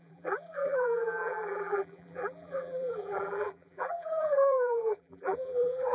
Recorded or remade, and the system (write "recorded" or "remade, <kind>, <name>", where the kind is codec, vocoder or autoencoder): remade, vocoder, BigVGAN v2